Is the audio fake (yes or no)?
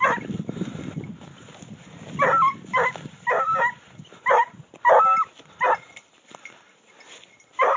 no